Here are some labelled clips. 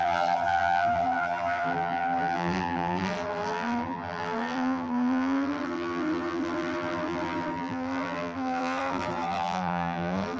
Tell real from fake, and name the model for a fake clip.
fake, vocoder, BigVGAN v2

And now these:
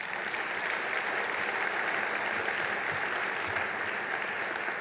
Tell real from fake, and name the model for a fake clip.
real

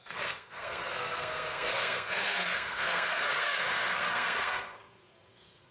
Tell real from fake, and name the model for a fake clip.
fake, codec, SNAC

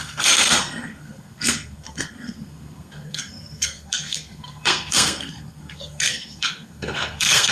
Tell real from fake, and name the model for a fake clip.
fake, codec, SNAC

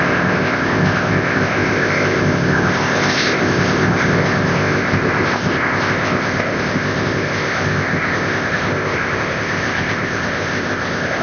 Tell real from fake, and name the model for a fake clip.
fake, codec, ZipCodec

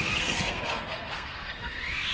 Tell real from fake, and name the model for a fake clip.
fake, codec, SNAC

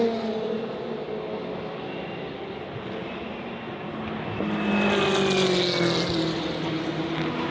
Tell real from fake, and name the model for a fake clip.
real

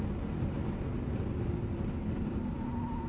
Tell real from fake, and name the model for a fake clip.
real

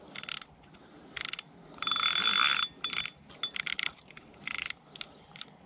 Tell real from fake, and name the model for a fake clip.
real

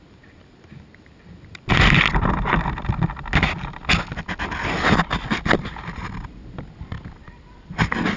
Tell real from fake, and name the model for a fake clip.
real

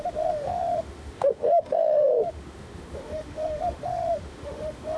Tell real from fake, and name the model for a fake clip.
fake, autoencoder, DAC-VAE